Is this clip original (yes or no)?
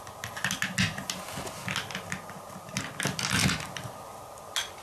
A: yes